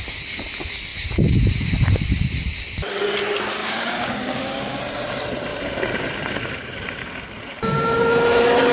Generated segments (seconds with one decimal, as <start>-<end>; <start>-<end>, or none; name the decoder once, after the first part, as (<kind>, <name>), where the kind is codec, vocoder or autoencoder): 3.6-4.8 (codec, DAC)